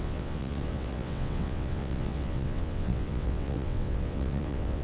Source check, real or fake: fake